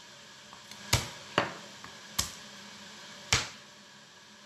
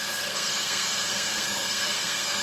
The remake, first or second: second